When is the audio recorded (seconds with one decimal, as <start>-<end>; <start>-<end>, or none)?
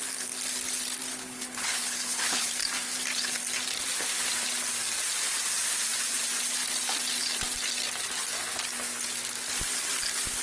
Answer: 0.0-1.1; 2.5-10.4